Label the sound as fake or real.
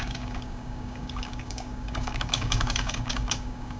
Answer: fake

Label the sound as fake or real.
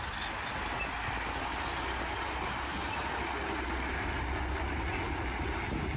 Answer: real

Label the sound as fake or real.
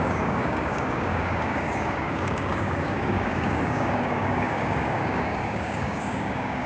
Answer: fake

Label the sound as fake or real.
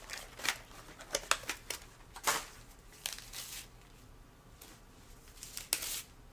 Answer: real